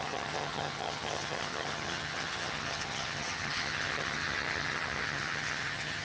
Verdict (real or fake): fake